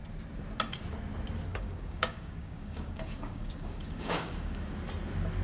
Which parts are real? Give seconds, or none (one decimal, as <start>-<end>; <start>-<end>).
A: 0.0-1.5; 4.7-5.4